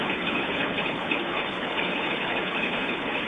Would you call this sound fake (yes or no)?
yes